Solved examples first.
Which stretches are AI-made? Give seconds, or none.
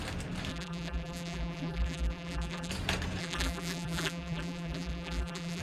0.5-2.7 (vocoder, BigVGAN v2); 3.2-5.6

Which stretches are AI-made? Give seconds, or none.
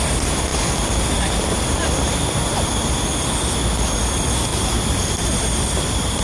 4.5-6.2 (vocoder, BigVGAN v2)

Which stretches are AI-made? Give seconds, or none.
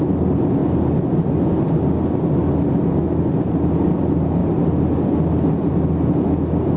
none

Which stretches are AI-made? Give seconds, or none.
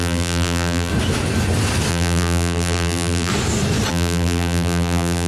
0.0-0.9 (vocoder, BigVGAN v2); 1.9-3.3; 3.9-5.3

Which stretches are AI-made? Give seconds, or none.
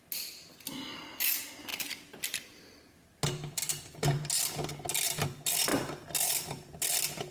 none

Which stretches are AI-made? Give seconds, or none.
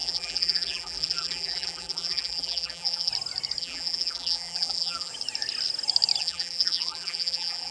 0.0-3.1 (vocoder, BigVGAN v2); 3.6-5.1; 6.2-7.7